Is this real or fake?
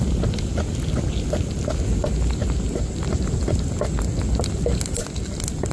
real